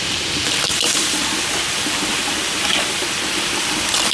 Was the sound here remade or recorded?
recorded